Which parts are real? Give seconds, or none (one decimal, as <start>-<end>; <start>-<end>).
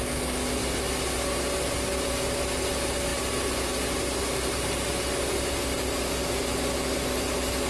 0.0-7.7